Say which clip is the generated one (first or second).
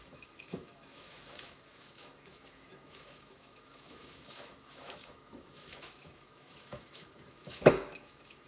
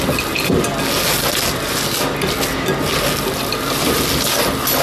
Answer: first